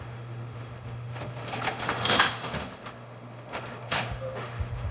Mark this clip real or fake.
fake